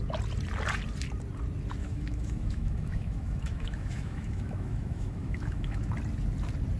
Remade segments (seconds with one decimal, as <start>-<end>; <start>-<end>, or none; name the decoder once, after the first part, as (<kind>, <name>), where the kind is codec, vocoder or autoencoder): 1.8-5.9 (autoencoder, DAC-VAE)